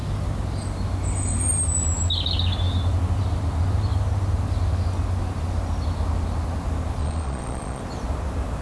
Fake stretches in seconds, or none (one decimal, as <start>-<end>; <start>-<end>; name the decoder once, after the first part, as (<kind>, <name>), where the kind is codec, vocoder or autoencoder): 7.0-7.8 (vocoder, Vocos)